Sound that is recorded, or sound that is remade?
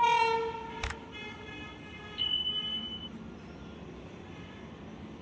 recorded